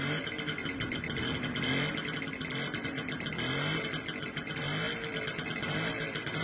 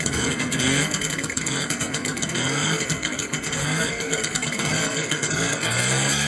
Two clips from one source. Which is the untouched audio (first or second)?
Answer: first